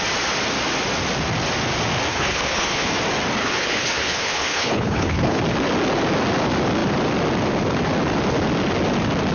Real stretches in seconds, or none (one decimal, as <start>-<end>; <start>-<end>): 0.0-2.1; 2.9-3.4; 5.4-9.3